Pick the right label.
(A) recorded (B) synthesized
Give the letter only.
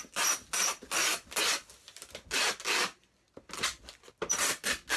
A